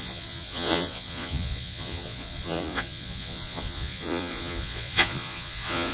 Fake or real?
fake